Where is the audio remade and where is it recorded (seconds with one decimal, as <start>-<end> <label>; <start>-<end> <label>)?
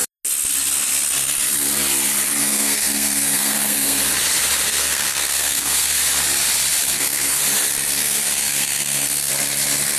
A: 0.0-2.4 recorded; 2.4-4.1 remade; 4.1-4.7 recorded; 4.7-6.0 remade; 6.0-6.9 recorded; 6.9-7.4 remade; 7.4-8.0 recorded; 8.0-9.3 remade; 9.3-10.0 recorded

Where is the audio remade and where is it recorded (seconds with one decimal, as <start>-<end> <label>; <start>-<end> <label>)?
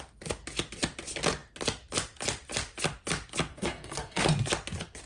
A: 0.0-3.5 recorded; 3.5-4.2 remade; 4.2-5.1 recorded